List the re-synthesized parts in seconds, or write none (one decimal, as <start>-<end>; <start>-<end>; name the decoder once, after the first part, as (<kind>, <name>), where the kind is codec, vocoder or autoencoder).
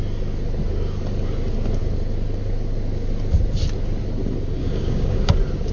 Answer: 4.6-5.3 (codec, DAC)